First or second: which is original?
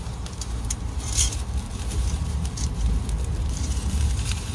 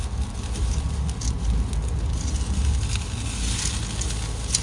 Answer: second